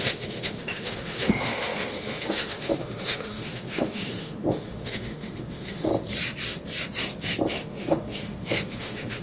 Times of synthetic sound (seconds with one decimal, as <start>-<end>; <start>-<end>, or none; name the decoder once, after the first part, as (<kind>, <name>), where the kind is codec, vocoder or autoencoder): 0.0-5.9 (autoencoder, DAC-VAE); 7.5-9.2